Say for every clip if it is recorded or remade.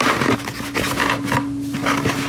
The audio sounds recorded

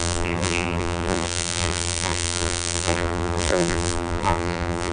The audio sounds remade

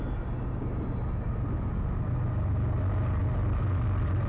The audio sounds recorded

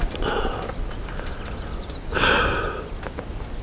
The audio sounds recorded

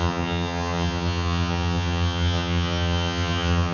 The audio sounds remade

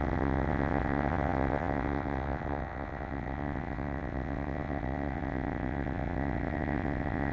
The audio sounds remade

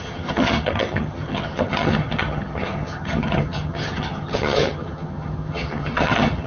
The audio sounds remade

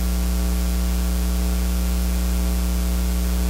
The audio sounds recorded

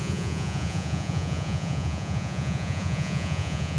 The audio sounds remade